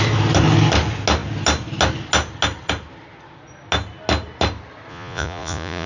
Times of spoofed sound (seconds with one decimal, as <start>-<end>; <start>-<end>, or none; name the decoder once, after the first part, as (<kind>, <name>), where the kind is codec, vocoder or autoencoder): 4.9-5.9 (vocoder, Vocos)